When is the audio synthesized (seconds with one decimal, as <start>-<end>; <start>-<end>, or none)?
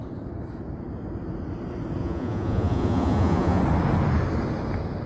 2.0-3.6